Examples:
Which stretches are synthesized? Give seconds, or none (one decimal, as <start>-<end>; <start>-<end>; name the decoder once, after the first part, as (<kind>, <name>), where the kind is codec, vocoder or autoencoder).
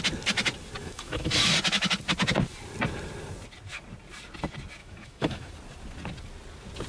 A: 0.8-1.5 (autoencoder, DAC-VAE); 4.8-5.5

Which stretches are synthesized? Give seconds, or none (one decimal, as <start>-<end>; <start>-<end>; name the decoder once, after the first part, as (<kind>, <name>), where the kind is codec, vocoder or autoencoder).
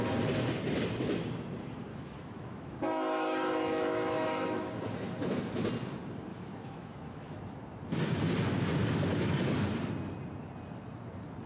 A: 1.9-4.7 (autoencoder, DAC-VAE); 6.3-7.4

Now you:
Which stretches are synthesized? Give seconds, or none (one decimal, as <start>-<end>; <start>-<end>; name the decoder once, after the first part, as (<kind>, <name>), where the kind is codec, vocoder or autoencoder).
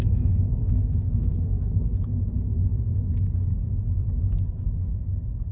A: 0.6-1.9 (codec, SNAC)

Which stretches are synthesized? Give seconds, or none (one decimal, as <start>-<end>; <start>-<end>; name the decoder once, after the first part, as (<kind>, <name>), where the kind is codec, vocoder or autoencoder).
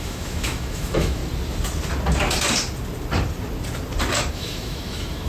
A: 0.0-1.2 (autoencoder, DAC-VAE); 4.3-5.3